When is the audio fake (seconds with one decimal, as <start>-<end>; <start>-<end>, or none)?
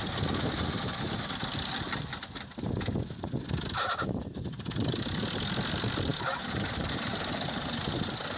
none